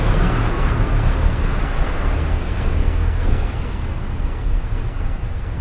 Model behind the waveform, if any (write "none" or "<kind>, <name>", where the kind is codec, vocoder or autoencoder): codec, SNAC